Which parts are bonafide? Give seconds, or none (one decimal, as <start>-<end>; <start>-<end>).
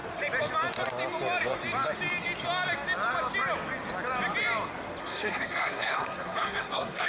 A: 0.0-5.0